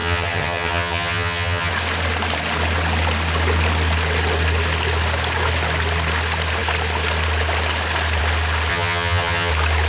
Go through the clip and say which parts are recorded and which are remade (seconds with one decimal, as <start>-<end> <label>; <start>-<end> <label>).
0.0-1.7 remade; 1.7-8.7 recorded; 8.7-9.5 remade; 9.5-9.9 recorded